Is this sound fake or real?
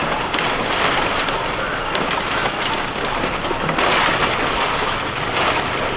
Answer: real